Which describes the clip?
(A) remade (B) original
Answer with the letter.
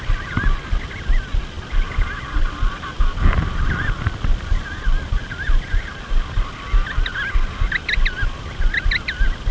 B